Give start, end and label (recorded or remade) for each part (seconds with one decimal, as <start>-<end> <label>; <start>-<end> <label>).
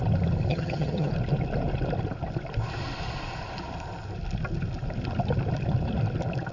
0.0-0.5 recorded; 0.5-1.1 remade; 1.1-6.5 recorded